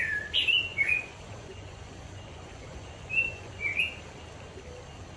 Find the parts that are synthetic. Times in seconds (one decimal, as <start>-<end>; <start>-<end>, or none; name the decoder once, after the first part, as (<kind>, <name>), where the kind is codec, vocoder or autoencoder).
0.7-3.8 (vocoder, Vocos)

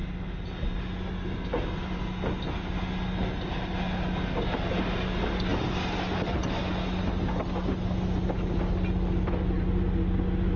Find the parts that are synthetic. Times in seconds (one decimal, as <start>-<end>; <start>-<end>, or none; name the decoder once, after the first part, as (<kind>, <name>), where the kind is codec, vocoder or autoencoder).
none

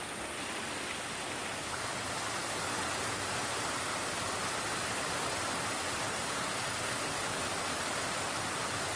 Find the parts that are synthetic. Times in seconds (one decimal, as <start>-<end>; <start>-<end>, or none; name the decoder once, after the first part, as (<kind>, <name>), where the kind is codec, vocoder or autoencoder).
none

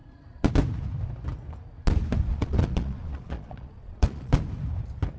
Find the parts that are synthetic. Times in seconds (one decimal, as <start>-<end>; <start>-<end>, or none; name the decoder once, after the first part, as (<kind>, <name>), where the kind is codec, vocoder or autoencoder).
0.0-0.5 (vocoder, Vocos); 2.3-4.4

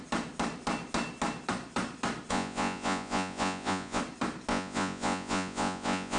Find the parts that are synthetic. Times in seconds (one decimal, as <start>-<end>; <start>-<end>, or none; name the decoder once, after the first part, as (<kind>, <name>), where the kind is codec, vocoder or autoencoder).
2.3-4.0 (vocoder, Vocos); 4.5-6.2

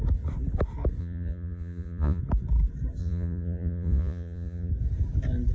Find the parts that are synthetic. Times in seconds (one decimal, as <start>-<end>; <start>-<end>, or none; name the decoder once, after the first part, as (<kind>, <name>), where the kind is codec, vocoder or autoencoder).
1.0-2.2 (vocoder, Vocos); 3.0-4.7